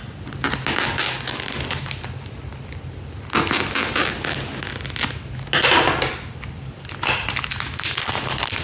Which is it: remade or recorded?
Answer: recorded